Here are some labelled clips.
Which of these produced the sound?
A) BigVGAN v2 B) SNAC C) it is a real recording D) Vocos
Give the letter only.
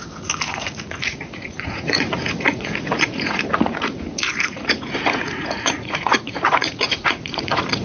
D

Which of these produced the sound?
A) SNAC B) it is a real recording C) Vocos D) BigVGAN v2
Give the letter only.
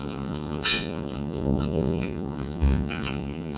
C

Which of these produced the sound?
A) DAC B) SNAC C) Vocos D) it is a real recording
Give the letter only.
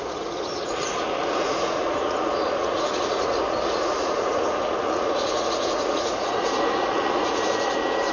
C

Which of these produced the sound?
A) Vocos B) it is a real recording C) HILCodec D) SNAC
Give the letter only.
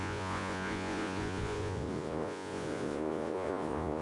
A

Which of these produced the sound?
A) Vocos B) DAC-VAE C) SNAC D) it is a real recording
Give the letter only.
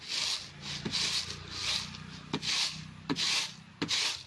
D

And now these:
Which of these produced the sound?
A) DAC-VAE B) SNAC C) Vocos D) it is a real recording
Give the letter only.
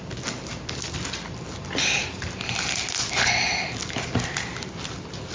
D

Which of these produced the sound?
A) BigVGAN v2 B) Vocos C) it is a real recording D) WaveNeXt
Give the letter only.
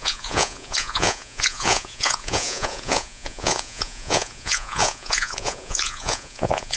B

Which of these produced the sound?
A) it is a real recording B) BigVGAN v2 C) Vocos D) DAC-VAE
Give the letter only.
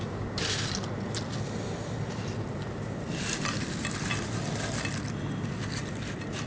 A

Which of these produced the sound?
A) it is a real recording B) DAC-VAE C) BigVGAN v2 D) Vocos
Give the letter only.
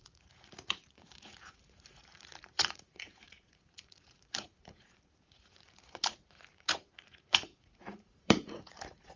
D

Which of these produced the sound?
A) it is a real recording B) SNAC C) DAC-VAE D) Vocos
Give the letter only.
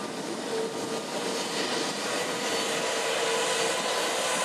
A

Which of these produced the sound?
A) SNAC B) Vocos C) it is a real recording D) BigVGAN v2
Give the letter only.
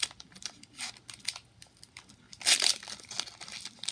C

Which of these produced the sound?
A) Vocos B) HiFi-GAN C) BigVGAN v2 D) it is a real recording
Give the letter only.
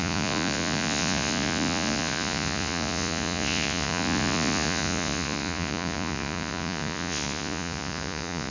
A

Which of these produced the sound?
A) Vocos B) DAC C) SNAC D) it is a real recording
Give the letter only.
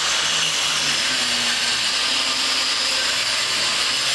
D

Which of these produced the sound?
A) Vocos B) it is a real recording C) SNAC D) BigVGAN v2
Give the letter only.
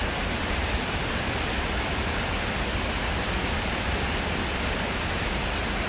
B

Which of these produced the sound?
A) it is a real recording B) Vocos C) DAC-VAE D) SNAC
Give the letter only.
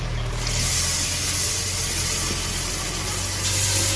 A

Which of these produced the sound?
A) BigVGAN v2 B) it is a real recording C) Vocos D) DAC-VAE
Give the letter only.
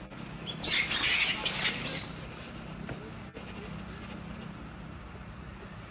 B